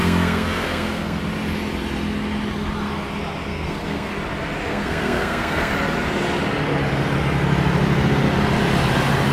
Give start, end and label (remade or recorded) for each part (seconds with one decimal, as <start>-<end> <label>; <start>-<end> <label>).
0.0-1.2 remade; 1.2-3.5 recorded; 3.5-4.1 remade; 4.1-4.7 recorded; 4.7-5.7 remade; 5.7-9.3 recorded